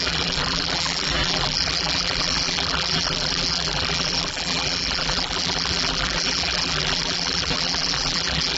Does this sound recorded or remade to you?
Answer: remade